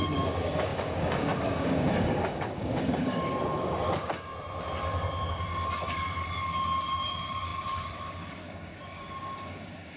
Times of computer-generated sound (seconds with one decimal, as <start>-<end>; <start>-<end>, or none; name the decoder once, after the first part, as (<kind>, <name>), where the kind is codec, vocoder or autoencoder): 0.0-4.3 (codec, DAC); 5.3-10.0